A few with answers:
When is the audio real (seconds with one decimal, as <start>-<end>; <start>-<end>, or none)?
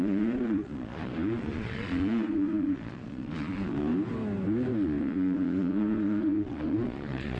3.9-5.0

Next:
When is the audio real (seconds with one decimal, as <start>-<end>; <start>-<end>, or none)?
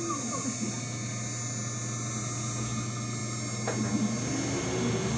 0.0-5.2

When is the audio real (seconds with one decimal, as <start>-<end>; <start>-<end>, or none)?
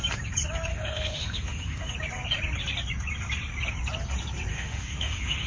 0.0-0.7; 1.9-4.5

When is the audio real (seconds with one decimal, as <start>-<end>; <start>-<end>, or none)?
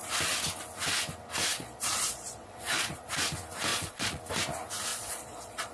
0.0-1.5; 3.1-3.7; 4.2-4.9